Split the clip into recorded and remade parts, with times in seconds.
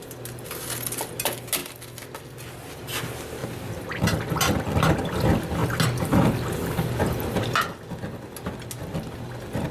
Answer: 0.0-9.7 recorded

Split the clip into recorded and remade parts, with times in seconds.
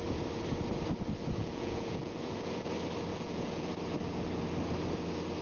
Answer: 0.0-1.4 recorded; 1.4-2.6 remade; 2.6-3.1 recorded; 3.1-3.7 remade; 3.7-5.4 recorded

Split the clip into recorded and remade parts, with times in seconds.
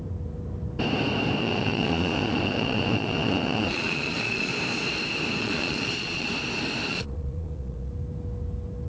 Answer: 0.0-1.4 recorded; 1.4-4.5 remade; 4.5-5.4 recorded; 5.4-6.3 remade; 6.3-6.9 recorded; 6.9-7.9 remade; 7.9-8.9 recorded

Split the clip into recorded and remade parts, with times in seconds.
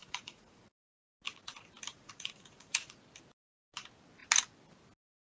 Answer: 0.0-0.9 remade; 0.9-1.9 recorded; 1.9-3.0 remade; 3.0-5.3 recorded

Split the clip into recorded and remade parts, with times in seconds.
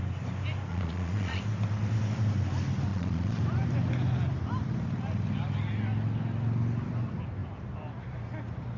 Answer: 0.0-0.7 recorded; 0.7-1.4 remade; 1.4-2.9 recorded; 2.9-3.4 remade; 3.4-8.8 recorded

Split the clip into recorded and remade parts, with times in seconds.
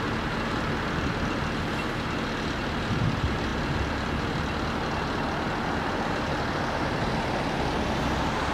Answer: 0.0-8.5 recorded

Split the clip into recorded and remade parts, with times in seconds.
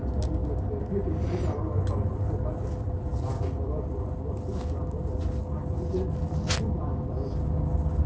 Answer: 0.0-8.1 recorded